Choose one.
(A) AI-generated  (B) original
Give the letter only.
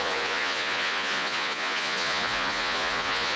A